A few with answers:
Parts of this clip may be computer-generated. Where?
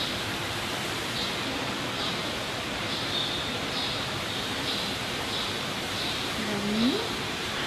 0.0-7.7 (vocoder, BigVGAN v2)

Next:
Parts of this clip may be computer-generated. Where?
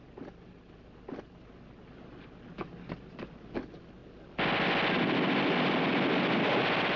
none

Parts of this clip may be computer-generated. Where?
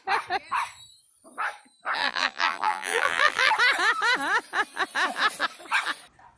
2.0-3.5 (vocoder, BigVGAN v2)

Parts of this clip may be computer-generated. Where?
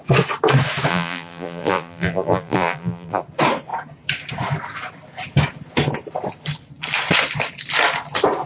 0.9-3.2 (vocoder, BigVGAN v2)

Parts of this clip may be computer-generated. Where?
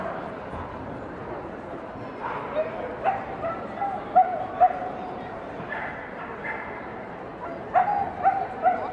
0.0-7.3 (vocoder, BigVGAN v2); 8.2-8.9